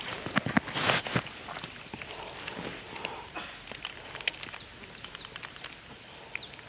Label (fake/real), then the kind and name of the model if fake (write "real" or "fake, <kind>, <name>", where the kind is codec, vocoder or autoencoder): real